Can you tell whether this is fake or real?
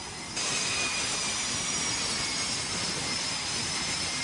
real